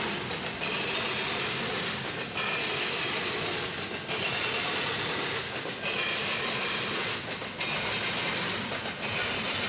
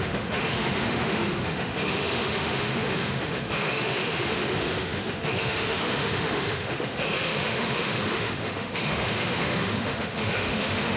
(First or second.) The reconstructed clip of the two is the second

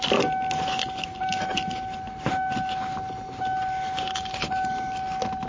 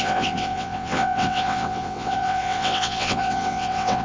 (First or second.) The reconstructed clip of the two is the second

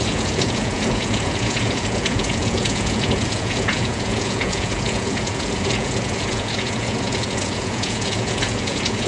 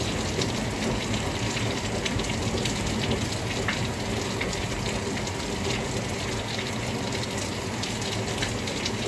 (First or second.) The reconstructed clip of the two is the first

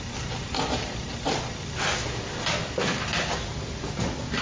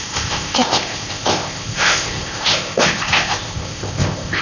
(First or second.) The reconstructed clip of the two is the second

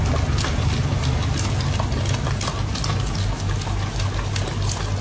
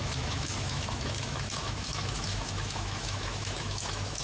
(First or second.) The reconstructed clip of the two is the second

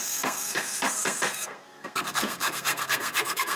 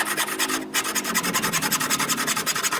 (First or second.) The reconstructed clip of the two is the first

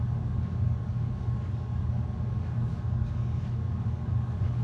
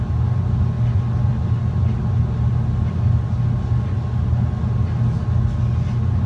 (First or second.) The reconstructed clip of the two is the first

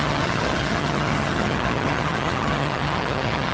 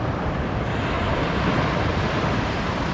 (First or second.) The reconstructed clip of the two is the first